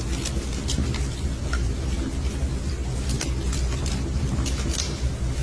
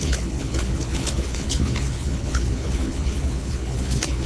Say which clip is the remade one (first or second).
second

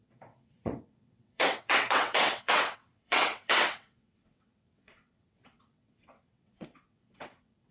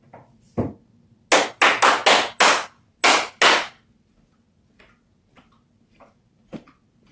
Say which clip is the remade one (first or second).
first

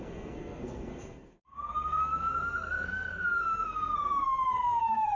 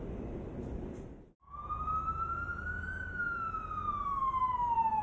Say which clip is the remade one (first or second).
first